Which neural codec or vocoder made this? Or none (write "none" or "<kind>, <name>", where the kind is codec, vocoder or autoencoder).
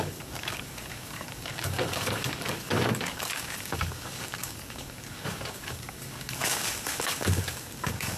codec, DAC